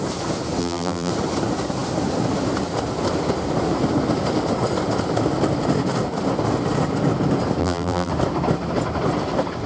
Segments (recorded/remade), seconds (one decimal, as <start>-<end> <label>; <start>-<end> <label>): 0.0-0.6 recorded; 0.6-1.1 remade; 1.1-7.6 recorded; 7.6-8.1 remade; 8.1-9.7 recorded